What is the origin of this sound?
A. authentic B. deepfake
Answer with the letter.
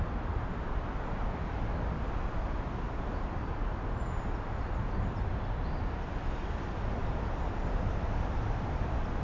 A